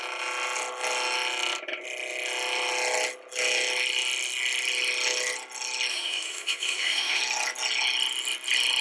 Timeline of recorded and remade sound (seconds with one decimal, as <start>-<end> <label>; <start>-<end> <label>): 0.0-5.9 recorded; 5.9-7.2 remade; 7.2-8.8 recorded